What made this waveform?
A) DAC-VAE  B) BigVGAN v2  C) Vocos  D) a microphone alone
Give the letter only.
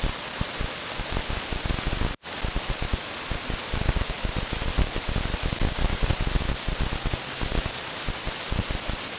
D